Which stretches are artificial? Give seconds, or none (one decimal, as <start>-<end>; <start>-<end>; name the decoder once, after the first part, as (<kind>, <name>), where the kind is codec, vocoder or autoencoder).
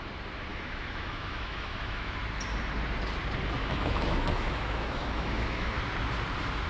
0.5-2.2 (autoencoder, DAC-VAE); 3.6-5.8